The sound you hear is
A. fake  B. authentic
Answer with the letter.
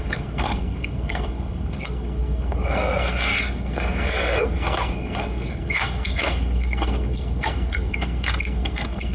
A